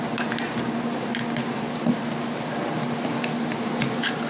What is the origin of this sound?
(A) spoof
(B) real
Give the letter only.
B